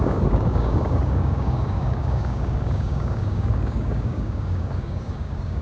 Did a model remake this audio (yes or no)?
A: yes